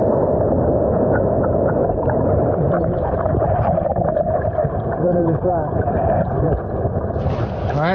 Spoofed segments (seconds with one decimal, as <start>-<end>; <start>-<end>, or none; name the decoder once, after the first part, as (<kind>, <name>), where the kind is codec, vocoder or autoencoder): 1.8-6.5 (vocoder, BigVGAN v2)